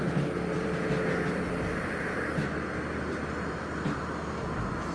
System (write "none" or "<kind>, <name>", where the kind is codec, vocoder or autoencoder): none